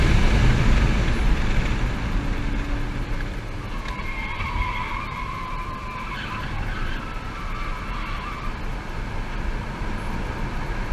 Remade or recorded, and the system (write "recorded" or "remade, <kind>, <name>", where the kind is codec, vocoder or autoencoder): recorded